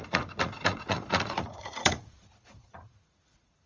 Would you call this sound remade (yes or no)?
yes